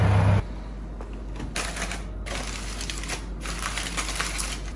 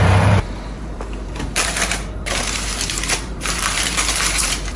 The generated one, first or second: second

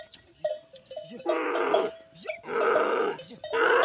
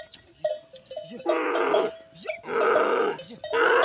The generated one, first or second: first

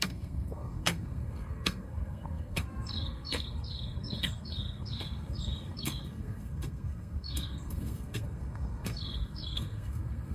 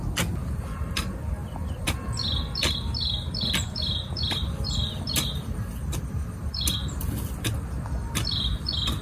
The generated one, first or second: first